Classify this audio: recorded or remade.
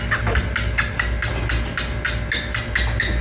recorded